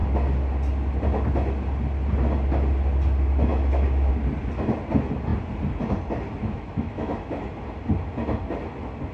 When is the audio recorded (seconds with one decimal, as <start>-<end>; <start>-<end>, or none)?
0.0-3.5; 4.1-6.4; 7.4-9.1